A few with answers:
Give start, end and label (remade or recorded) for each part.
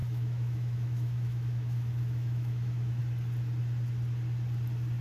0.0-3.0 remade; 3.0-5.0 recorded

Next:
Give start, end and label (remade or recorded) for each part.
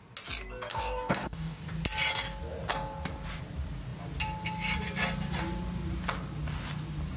0.0-0.7 recorded; 0.7-1.6 remade; 1.6-7.2 recorded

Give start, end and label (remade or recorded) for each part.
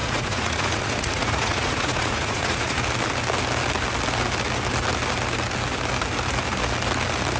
0.0-2.8 remade; 2.8-7.4 recorded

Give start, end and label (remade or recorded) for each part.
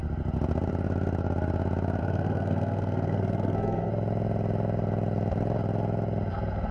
0.0-2.0 recorded; 2.0-3.9 remade; 3.9-6.7 recorded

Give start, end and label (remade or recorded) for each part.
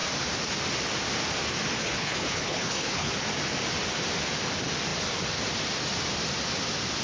0.0-1.8 recorded; 1.8-3.1 remade; 3.1-7.0 recorded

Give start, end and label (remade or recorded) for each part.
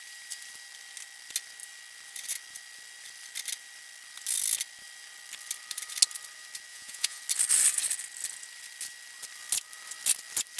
0.0-6.7 recorded; 6.7-7.2 remade; 7.2-10.6 recorded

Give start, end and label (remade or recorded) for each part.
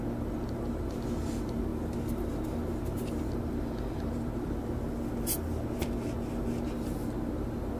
0.0-7.8 recorded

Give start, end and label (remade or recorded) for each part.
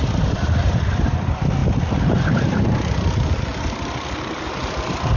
0.0-5.2 remade